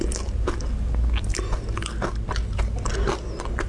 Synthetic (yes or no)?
no